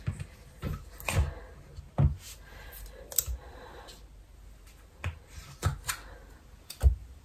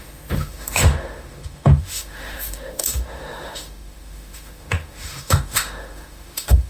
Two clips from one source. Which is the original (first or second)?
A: first